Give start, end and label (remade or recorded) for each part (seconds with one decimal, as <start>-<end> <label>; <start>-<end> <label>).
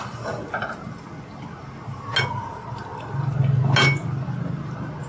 0.0-5.1 recorded